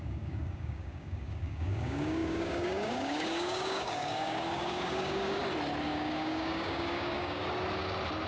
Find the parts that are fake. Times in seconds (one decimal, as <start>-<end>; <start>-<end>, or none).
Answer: 0.0-5.4; 5.9-7.4